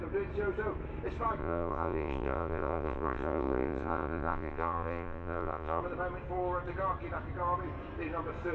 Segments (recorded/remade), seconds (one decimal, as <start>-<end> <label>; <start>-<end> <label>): 0.0-1.4 recorded; 1.4-5.8 remade; 5.8-8.5 recorded

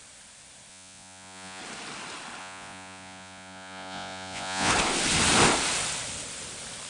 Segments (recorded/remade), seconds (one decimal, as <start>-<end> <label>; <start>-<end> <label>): 0.0-0.7 recorded; 0.7-1.6 remade; 1.6-2.4 recorded; 2.4-4.7 remade; 4.7-6.9 recorded

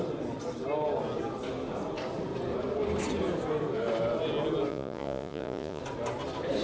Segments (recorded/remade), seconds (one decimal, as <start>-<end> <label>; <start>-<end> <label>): 0.0-4.7 recorded; 4.7-5.8 remade; 5.8-6.6 recorded

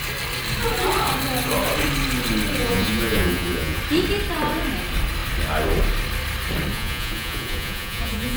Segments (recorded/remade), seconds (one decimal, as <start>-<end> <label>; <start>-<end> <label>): 0.0-2.6 recorded; 2.6-3.8 remade; 3.8-6.7 recorded; 6.7-8.4 remade

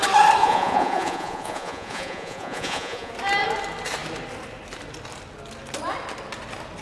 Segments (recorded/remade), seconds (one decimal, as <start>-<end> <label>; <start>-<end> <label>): 0.0-0.4 recorded; 0.4-3.1 remade; 3.1-6.8 recorded

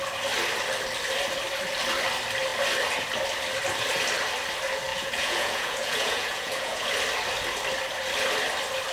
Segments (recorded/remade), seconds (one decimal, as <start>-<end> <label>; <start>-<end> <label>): 0.0-4.9 recorded; 4.9-6.9 remade; 6.9-8.9 recorded